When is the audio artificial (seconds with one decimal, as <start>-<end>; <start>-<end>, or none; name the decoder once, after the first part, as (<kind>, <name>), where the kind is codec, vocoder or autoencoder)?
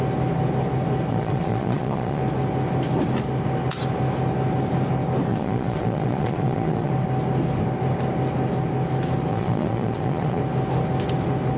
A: 1.1-2.2 (vocoder, Vocos); 5.3-6.9; 9.3-10.4